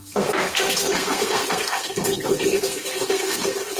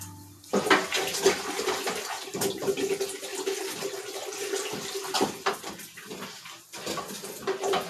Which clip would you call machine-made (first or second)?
first